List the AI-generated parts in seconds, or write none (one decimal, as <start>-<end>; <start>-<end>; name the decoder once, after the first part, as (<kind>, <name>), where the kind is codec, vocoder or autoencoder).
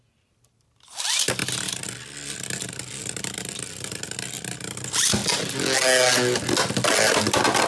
none